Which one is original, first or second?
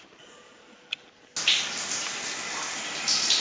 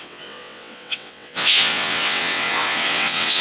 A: first